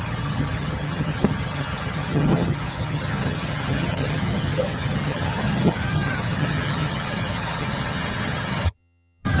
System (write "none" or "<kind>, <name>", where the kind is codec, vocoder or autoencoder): vocoder, HiFi-GAN